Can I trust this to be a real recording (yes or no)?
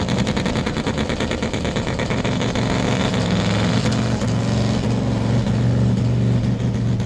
yes